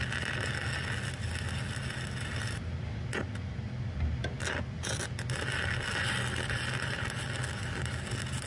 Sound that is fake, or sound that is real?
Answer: real